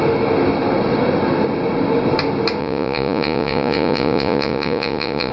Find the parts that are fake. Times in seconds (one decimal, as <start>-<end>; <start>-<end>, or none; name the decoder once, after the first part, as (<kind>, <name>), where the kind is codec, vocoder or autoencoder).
2.6-5.3 (vocoder, Vocos)

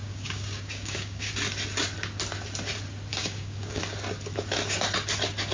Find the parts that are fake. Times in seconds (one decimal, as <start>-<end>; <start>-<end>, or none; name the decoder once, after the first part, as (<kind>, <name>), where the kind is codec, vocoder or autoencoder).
0.0-1.3 (codec, DAC); 3.1-3.8

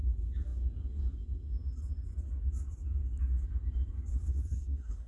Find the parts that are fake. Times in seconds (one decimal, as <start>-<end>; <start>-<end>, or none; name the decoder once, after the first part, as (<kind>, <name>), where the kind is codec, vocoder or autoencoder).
4.1-5.1 (codec, SNAC)

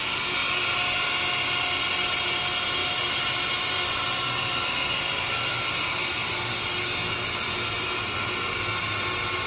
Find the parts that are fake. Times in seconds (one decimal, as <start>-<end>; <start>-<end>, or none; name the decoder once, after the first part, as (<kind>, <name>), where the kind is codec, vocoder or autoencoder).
0.4-1.1 (vocoder, BigVGAN v2); 2.8-5.2

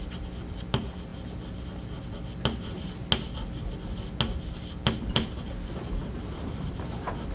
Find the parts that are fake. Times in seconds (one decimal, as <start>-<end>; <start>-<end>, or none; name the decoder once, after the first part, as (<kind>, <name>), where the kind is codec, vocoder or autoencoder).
none

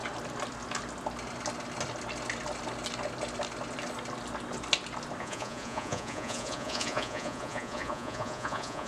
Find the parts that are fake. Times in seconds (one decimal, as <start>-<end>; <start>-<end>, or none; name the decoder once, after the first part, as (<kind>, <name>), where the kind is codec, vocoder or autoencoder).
5.2-8.9 (vocoder, Vocos)

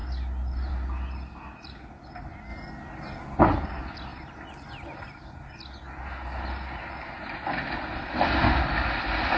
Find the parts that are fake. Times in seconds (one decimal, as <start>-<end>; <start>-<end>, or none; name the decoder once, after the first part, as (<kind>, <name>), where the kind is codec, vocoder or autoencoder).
none

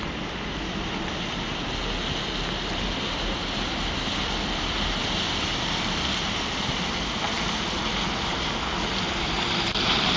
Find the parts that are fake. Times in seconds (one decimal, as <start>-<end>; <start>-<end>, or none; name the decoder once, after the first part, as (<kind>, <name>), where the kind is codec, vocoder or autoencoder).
none